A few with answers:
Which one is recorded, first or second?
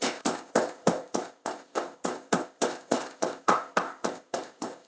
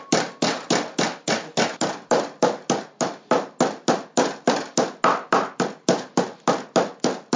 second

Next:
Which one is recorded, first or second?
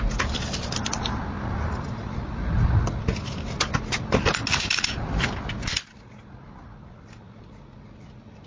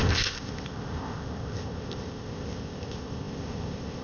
first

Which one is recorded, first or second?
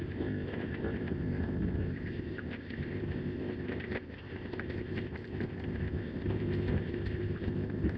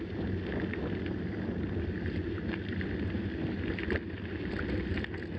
second